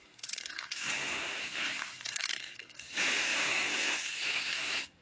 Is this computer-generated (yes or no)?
yes